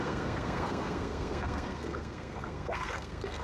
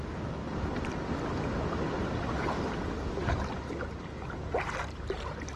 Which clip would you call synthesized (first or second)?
first